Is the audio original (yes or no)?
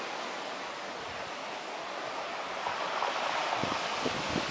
yes